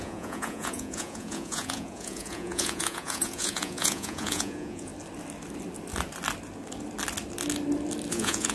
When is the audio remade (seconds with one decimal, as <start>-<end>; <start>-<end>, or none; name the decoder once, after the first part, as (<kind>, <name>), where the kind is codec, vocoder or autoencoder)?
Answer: 0.0-4.9 (vocoder, Vocos); 8.1-8.5